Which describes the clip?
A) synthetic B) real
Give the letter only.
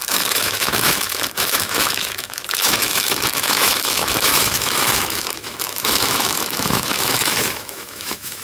A